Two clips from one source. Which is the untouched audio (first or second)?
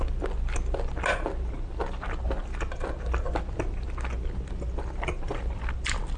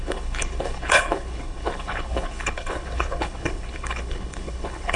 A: first